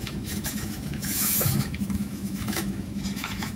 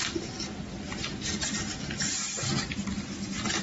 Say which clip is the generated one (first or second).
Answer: first